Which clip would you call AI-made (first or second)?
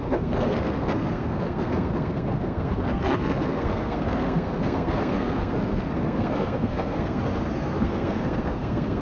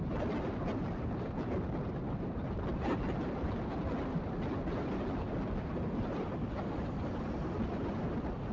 first